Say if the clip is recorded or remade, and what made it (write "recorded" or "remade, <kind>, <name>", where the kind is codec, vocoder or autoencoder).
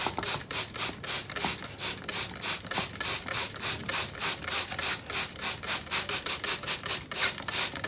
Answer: recorded